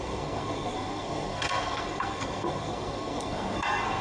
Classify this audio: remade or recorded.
remade